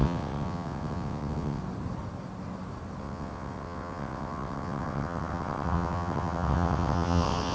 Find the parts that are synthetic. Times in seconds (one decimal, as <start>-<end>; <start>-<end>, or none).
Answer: 0.0-1.6; 3.0-7.5